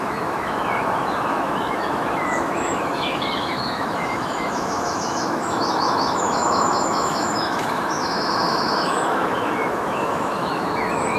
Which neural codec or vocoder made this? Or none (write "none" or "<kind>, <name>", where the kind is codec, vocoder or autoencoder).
autoencoder, DAC-VAE